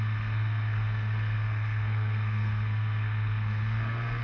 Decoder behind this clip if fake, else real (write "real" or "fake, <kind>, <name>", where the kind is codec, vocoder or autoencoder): fake, codec, SNAC